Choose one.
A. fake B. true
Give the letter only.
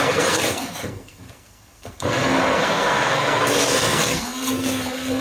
A